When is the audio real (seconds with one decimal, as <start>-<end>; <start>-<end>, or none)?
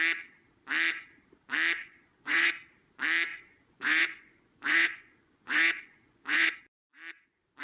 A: 0.0-1.8; 2.5-3.3; 6.5-7.6